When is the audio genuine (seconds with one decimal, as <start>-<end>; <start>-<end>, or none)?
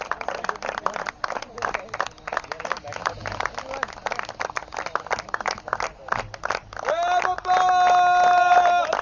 0.0-9.0